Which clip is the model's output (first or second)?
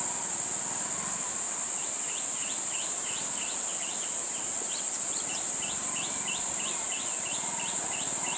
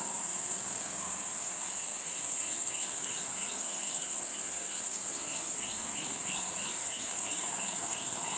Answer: second